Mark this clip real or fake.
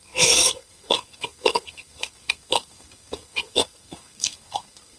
fake